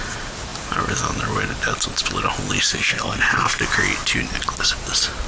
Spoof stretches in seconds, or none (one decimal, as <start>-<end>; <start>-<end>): 2.7-3.6